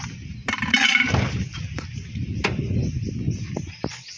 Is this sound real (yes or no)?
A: no